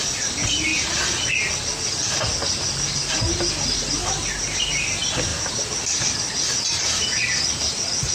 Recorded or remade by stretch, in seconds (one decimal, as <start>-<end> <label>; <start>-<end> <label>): 0.0-0.7 recorded; 0.7-1.3 remade; 1.3-8.1 recorded